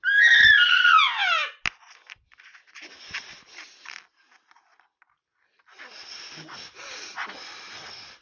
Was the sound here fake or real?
real